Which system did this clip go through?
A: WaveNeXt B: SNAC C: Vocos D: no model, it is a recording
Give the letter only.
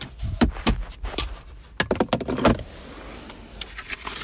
D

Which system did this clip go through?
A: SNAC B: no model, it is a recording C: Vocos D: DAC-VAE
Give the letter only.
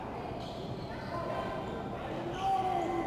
B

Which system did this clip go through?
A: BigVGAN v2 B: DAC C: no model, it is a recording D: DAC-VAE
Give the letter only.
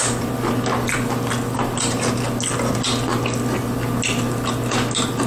C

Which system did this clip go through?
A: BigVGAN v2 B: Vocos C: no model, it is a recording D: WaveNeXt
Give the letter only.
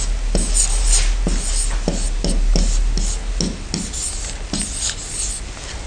C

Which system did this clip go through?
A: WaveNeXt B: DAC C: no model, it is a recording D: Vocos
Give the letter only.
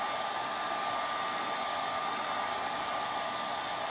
C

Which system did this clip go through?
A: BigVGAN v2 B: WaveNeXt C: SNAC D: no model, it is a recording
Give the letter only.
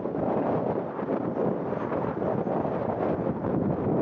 D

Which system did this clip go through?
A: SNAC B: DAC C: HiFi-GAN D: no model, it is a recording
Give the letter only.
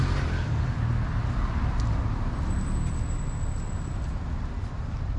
D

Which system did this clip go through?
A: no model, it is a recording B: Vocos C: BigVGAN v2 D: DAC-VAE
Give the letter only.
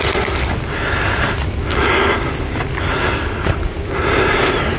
A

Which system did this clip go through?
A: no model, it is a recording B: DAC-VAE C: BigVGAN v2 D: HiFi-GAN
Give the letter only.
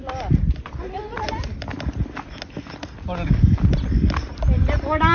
A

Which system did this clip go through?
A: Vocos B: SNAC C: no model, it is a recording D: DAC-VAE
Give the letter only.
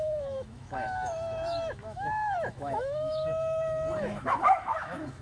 D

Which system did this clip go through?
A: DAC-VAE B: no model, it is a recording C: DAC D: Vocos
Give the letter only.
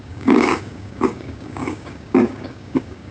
C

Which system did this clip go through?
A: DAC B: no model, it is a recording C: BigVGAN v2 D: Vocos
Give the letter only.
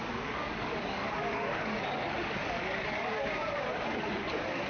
A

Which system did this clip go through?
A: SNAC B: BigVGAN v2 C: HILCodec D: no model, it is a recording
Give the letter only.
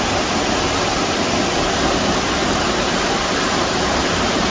D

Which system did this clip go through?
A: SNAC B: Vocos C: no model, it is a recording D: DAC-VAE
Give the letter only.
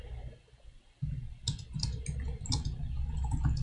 C